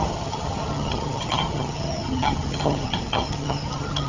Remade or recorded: remade